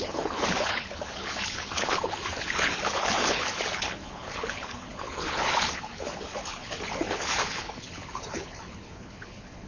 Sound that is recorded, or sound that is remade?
remade